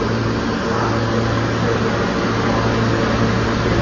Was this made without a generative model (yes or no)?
yes